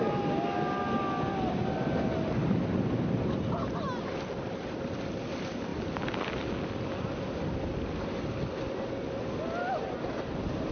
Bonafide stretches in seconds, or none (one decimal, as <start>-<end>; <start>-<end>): 0.0-10.7